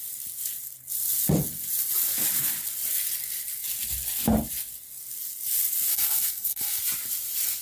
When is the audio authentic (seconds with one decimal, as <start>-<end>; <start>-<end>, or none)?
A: 0.0-5.9; 6.8-7.6